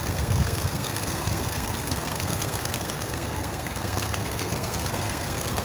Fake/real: fake